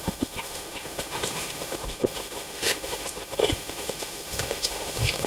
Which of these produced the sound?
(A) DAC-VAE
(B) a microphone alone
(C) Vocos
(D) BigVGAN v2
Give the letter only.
A